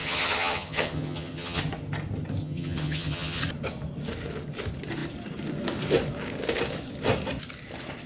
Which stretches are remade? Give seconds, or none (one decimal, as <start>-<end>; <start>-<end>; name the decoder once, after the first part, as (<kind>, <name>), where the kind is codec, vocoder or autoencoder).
0.0-1.6 (vocoder, HiFi-GAN); 2.4-3.4